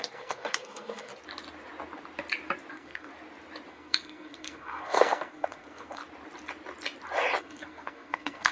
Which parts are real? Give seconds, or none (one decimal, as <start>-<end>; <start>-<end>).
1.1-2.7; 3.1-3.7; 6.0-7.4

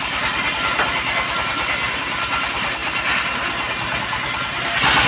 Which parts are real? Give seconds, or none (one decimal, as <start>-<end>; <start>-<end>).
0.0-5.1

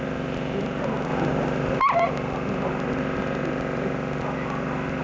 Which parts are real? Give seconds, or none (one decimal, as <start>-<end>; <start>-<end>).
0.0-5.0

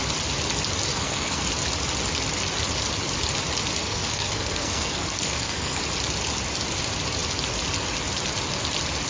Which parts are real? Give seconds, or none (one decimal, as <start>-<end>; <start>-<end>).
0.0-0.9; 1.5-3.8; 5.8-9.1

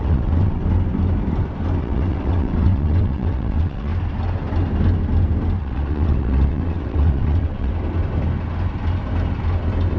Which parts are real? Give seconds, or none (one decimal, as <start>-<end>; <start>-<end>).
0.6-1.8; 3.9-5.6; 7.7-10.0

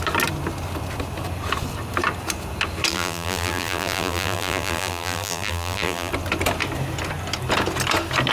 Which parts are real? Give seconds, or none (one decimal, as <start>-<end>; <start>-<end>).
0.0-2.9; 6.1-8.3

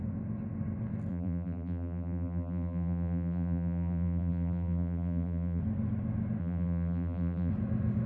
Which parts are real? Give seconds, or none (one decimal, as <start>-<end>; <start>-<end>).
0.0-1.1; 5.6-6.4; 7.5-8.1